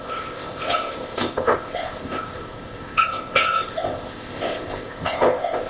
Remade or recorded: remade